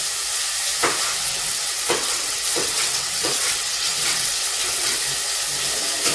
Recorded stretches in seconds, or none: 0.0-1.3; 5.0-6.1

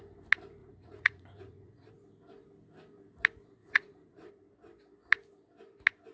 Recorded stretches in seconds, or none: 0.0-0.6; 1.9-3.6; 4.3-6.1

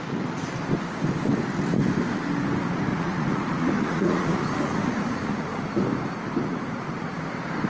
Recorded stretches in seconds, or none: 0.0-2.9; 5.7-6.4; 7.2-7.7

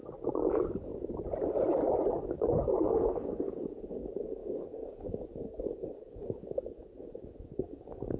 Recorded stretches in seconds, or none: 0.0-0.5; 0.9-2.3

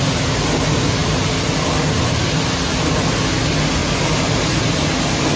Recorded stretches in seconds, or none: 0.0-1.0; 2.4-3.8; 4.6-5.4

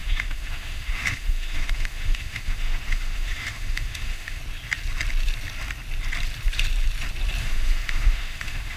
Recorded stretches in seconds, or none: 4.4-7.4

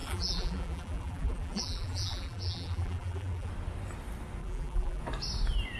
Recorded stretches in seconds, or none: 3.5-4.4; 5.0-5.8

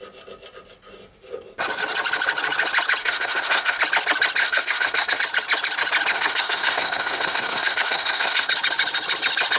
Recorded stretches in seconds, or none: 0.0-3.0; 3.8-4.4; 5.2-6.1; 8.5-9.6